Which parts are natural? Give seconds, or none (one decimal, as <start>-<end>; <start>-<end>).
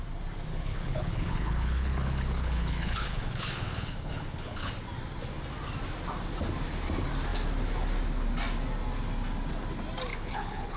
0.0-0.5; 4.7-10.1